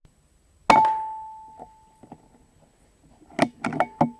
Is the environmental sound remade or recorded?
recorded